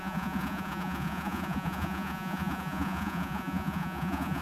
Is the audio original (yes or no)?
no